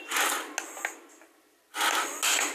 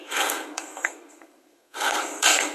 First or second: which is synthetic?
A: second